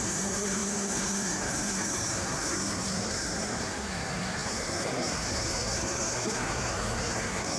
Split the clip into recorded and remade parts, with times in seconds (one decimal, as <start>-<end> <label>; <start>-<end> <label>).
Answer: 0.0-7.6 remade